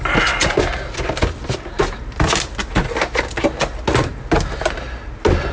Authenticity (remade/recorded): recorded